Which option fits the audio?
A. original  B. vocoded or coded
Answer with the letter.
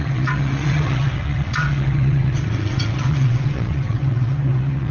B